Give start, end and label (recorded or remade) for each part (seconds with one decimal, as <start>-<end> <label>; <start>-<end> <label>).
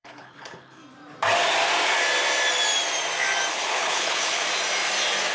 0.0-0.8 remade; 0.8-3.5 recorded; 3.5-4.4 remade; 4.4-5.3 recorded